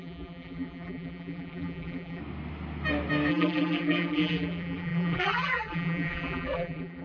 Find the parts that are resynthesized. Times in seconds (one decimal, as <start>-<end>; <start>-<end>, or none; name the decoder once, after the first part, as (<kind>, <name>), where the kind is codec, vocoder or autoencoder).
0.0-2.2 (vocoder, BigVGAN v2); 3.3-7.0